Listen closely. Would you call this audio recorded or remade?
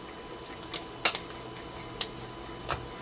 recorded